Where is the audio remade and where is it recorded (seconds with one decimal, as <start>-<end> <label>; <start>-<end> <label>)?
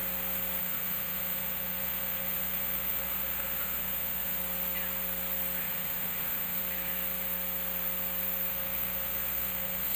0.0-0.6 recorded; 0.6-4.4 remade; 4.4-5.6 recorded; 5.6-6.6 remade; 6.6-8.5 recorded; 8.5-10.0 remade